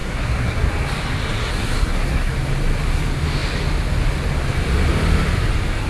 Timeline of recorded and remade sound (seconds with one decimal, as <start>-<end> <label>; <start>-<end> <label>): 0.0-0.7 remade; 0.7-1.4 recorded; 1.4-2.3 remade; 2.3-5.9 recorded